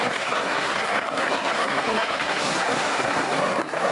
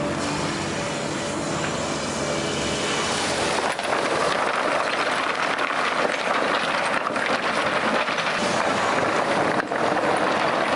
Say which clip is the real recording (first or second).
second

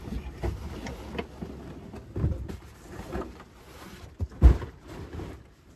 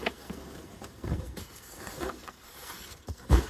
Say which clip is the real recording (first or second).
first